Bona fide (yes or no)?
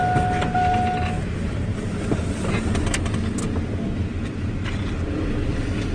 yes